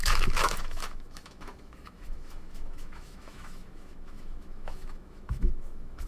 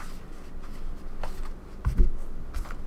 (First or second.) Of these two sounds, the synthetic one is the first